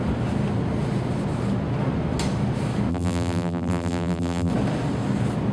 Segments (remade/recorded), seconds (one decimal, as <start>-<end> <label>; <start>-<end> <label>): 0.0-2.9 recorded; 2.9-4.5 remade; 4.5-5.5 recorded